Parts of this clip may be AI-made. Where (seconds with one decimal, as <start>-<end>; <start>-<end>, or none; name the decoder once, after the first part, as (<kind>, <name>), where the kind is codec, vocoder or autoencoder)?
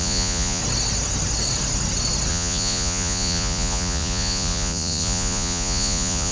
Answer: 0.0-0.6 (vocoder, Vocos); 2.3-6.3